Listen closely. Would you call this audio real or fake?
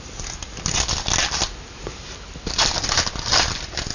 real